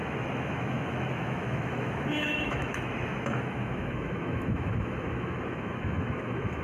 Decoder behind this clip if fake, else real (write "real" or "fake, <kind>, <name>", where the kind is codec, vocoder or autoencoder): fake, autoencoder, DAC-VAE